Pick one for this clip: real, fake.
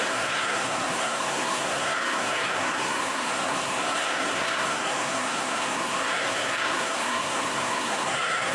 fake